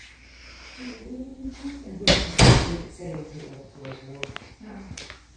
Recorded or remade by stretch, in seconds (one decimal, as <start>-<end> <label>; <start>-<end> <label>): 0.0-5.4 recorded